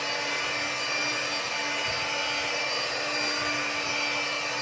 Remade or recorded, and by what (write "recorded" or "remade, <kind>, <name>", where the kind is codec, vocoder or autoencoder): recorded